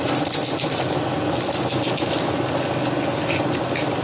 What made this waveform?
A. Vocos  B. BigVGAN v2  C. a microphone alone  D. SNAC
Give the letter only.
C